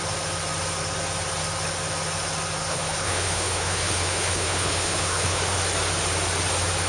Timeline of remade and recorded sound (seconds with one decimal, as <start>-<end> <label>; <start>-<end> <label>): 0.0-2.7 recorded; 2.7-5.6 remade; 5.6-6.9 recorded